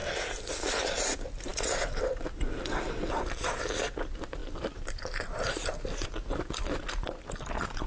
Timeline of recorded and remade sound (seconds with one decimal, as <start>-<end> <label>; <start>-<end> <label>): 0.0-7.9 recorded